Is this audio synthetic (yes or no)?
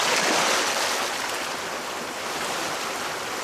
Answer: no